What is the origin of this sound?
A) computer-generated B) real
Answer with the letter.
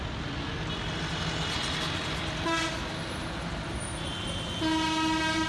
B